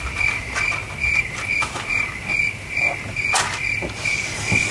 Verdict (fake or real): real